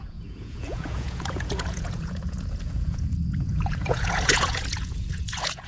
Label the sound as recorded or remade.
remade